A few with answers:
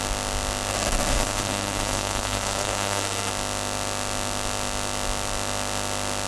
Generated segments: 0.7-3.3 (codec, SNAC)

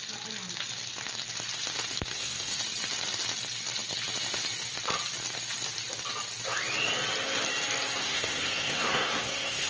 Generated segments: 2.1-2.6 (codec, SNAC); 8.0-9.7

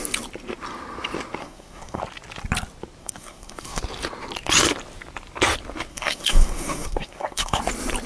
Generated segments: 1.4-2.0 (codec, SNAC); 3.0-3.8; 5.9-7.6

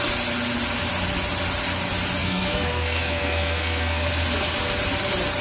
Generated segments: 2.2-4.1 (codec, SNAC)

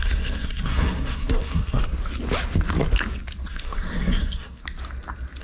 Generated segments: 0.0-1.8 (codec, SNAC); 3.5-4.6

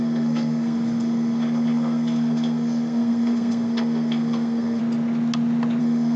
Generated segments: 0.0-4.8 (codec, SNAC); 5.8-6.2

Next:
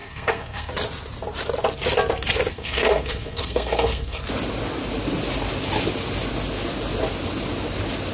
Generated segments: 0.0-0.7 (codec, SNAC); 2.5-4.2